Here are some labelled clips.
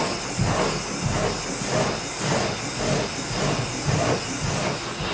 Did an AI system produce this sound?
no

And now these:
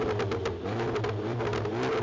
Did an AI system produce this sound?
no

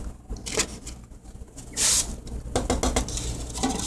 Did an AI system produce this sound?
no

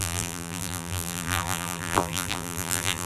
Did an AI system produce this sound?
yes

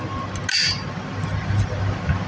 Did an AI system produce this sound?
no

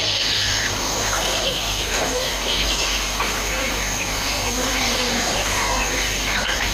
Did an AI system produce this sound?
yes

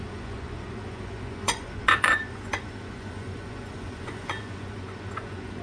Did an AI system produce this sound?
yes